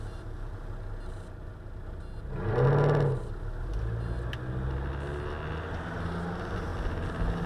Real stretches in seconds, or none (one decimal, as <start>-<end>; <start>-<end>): 0.0-7.5